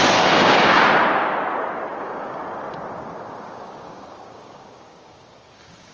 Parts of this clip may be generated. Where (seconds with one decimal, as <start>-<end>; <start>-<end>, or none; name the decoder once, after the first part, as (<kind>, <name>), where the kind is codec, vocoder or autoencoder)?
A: 0.0-0.8 (codec, DAC); 2.0-2.4; 3.3-5.9

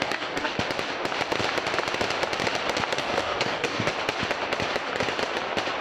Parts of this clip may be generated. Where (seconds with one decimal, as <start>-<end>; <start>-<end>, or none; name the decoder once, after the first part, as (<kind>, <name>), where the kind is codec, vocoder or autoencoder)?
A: 0.0-0.5 (codec, DAC); 3.0-3.9

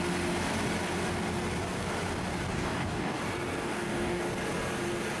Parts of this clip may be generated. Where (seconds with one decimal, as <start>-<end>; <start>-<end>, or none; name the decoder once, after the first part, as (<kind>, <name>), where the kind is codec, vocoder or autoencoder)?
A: 2.5-3.2 (codec, DAC); 3.6-4.2

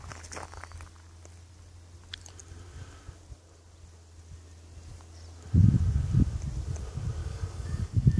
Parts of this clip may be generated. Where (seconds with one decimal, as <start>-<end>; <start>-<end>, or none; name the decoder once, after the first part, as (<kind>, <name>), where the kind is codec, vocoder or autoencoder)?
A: 7.2-8.2 (codec, DAC)

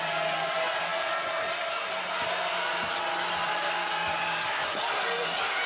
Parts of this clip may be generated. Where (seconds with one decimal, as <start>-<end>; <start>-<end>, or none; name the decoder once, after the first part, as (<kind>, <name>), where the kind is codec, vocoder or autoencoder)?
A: 3.5-4.8 (codec, DAC)

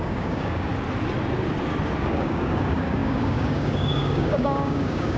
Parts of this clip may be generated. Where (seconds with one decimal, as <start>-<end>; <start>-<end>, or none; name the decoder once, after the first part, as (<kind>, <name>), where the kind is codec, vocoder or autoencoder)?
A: 0.0-0.7 (codec, DAC); 2.1-5.2

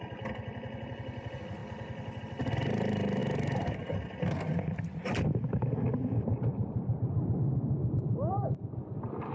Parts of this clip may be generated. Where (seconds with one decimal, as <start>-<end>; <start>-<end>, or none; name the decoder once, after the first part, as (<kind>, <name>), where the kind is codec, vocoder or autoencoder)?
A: 7.8-8.5 (codec, DAC)